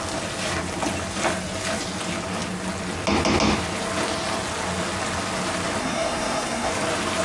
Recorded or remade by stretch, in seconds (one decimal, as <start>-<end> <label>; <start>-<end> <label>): 0.0-5.8 recorded; 5.8-6.7 remade; 6.7-7.2 recorded